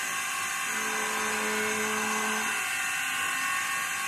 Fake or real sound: real